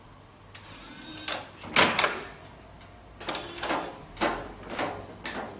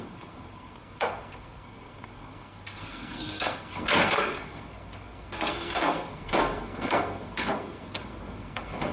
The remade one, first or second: second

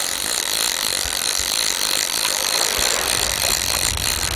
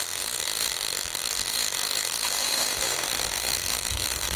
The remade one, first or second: second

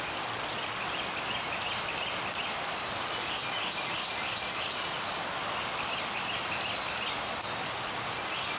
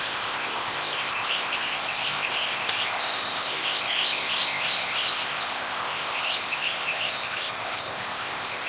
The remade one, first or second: second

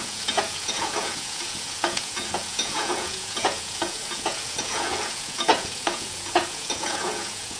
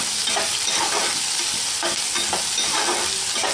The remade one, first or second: first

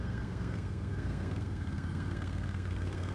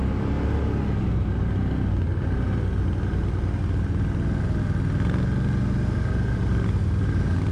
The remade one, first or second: first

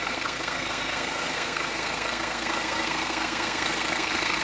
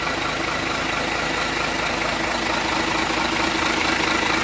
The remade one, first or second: first